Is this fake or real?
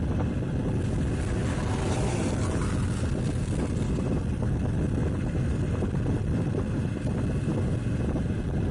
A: real